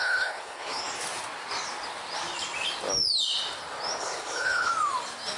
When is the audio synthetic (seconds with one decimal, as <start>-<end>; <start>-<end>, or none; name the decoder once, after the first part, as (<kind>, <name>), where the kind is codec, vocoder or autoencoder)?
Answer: 0.0-0.8 (codec, HILCodec); 4.0-4.7